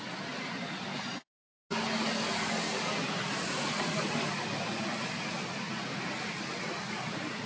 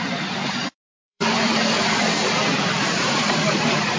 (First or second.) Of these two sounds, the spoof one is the second